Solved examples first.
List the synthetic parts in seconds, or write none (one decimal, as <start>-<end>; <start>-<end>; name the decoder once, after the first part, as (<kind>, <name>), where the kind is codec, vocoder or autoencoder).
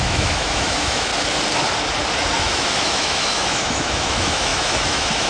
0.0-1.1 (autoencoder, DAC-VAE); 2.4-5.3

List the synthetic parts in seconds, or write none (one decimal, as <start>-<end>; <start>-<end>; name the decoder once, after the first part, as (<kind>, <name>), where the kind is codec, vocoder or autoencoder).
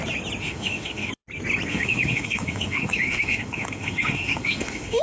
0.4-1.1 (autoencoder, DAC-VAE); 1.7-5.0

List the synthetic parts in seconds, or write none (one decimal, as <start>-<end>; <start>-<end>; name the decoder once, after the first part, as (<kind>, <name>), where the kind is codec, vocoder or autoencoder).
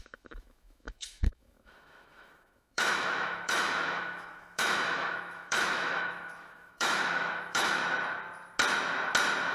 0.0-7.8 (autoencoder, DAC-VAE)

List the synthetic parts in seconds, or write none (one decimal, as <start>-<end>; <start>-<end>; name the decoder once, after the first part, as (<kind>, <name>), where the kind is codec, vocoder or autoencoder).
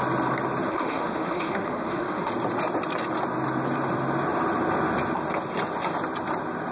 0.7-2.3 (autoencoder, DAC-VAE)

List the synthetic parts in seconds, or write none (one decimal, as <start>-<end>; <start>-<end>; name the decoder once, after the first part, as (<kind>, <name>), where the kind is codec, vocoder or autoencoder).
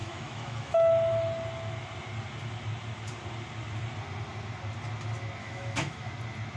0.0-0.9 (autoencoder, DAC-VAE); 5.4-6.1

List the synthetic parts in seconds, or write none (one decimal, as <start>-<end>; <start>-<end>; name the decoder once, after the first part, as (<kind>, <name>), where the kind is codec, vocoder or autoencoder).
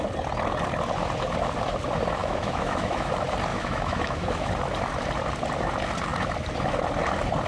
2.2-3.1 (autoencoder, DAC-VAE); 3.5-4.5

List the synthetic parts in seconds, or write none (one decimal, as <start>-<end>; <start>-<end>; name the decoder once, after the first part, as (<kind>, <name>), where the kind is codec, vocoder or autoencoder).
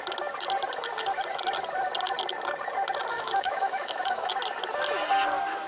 3.1-4.3 (autoencoder, DAC-VAE)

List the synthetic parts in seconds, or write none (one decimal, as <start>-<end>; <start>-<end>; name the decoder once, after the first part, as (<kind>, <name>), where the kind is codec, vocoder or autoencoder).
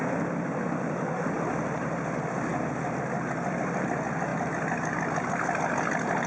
none